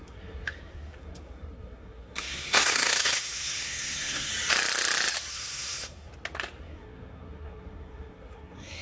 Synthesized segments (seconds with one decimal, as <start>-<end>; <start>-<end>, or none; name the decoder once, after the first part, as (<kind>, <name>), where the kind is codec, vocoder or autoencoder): 0.0-4.3 (codec, SNAC); 5.3-6.1; 6.6-8.8